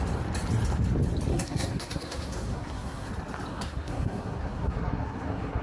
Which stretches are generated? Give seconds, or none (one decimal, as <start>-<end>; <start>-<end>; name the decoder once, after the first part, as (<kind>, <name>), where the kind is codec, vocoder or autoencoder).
1.3-3.1 (codec, SNAC); 3.5-5.6